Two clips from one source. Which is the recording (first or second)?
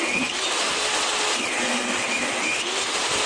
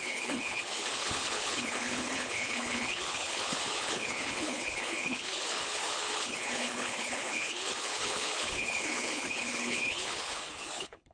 first